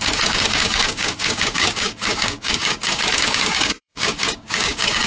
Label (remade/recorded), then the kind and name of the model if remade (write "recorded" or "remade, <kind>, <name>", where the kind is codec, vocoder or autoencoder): remade, codec, DAC